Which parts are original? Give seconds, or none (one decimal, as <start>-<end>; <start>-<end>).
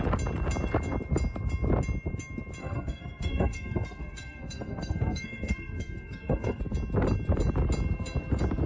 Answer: 0.0-2.6; 6.6-8.7